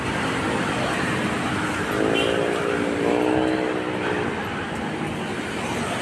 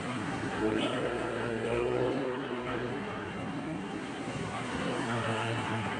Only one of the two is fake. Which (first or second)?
second